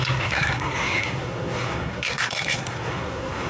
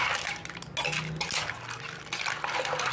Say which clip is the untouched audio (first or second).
second